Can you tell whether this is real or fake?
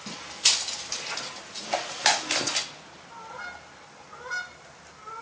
real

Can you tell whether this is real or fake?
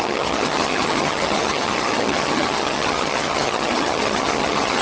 fake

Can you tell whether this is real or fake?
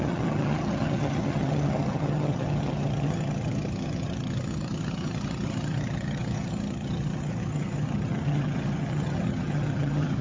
fake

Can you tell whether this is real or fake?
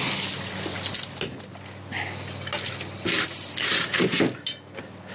real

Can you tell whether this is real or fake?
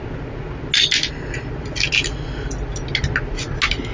real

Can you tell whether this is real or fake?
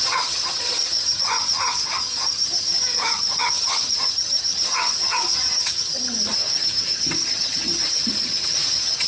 fake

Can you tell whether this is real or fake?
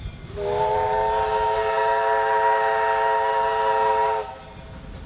real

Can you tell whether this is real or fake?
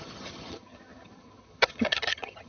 fake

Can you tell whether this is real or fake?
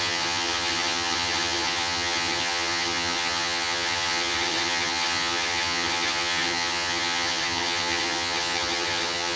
fake